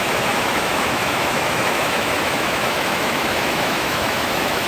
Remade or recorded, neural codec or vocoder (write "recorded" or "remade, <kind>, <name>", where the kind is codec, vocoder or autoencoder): remade, autoencoder, DAC-VAE